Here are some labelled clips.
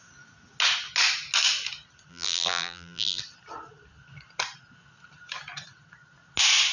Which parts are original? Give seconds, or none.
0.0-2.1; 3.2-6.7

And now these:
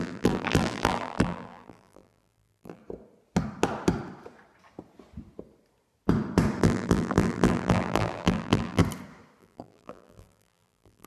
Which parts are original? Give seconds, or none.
2.8-6.6; 8.8-9.4

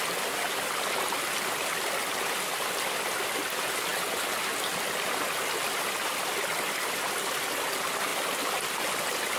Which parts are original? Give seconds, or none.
0.0-9.4

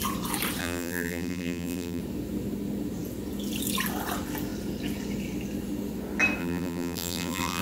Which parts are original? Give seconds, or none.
0.0-0.6; 2.0-6.4

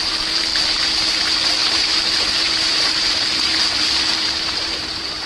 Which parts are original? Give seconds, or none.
0.5-1.1

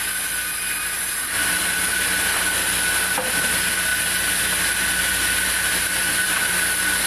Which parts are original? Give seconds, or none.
0.0-7.1

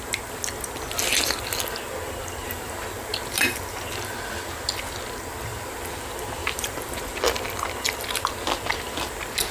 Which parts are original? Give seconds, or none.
0.0-2.4; 4.1-5.5; 6.0-6.4; 7.0-9.5

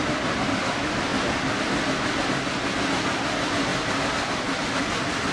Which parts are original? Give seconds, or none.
0.0-5.3